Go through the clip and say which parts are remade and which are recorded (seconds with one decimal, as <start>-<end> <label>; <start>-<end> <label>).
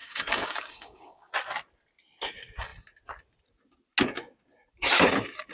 0.0-1.3 remade; 1.3-5.5 recorded